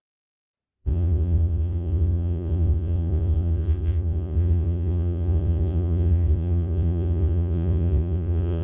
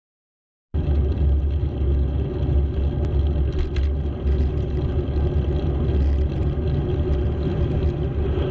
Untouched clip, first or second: second